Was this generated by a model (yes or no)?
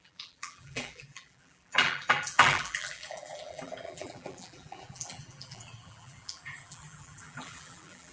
yes